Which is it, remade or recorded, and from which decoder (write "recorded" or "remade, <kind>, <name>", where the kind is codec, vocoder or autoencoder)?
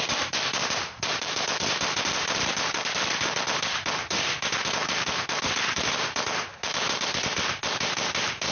remade, vocoder, BigVGAN v2